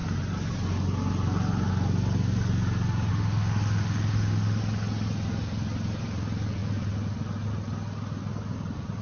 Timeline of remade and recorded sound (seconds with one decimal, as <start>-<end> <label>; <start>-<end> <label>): 0.0-3.1 recorded; 3.1-4.6 remade; 4.6-9.0 recorded